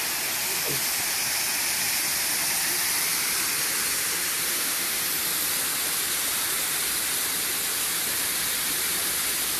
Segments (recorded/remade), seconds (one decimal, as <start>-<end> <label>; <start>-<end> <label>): 0.0-4.5 recorded; 4.5-5.0 remade; 5.0-9.6 recorded